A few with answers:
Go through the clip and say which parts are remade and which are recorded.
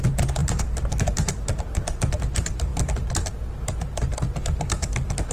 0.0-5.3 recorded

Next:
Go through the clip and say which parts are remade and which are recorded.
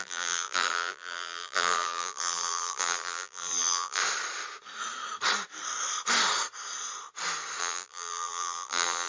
0.0-4.0 remade; 4.0-7.6 recorded; 7.6-9.1 remade